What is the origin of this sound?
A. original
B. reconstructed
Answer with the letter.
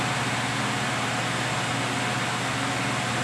A